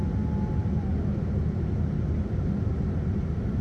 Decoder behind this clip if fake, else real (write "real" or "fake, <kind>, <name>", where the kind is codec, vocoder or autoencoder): real